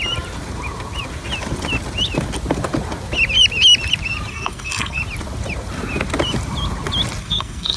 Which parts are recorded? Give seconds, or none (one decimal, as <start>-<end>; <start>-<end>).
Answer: 0.0-4.3; 5.0-7.2